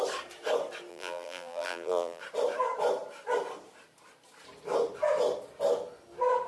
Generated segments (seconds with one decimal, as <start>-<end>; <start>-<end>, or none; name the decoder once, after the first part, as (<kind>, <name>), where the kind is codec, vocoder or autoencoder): 0.9-2.2 (vocoder, BigVGAN v2)